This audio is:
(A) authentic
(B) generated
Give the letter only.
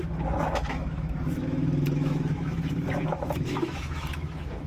B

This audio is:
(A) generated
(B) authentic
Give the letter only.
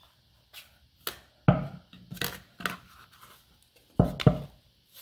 B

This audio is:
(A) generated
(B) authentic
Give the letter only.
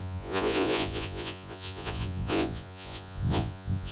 A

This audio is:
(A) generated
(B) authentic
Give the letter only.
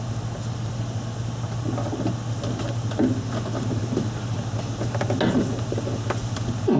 B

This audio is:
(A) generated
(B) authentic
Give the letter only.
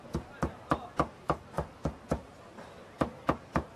B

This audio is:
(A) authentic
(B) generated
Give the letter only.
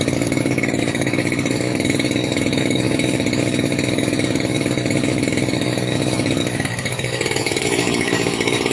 B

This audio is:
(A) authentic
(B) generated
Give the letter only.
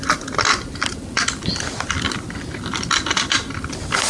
A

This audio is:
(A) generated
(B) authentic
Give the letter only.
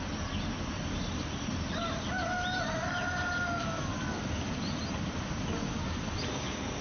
B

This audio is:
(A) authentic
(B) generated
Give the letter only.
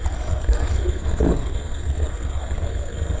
B